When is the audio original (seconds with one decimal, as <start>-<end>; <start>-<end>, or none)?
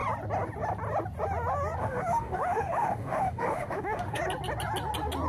0.0-1.8; 4.2-5.3